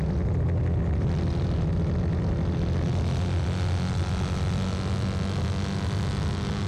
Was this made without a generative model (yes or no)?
yes